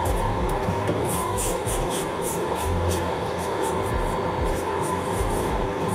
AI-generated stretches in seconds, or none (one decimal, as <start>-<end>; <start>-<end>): 0.0-3.8; 4.5-5.9